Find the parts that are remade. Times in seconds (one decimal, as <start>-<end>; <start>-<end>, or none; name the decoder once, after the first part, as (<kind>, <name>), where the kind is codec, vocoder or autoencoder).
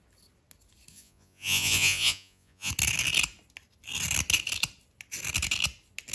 0.9-2.7 (vocoder, Vocos)